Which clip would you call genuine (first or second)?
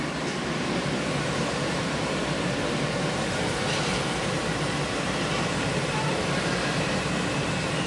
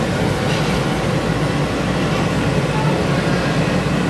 second